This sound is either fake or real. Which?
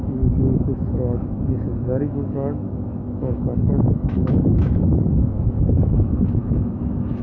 fake